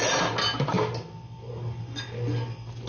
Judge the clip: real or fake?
real